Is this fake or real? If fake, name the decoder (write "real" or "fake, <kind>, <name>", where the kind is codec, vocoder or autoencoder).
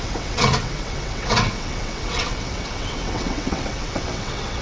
fake, vocoder, WaveNeXt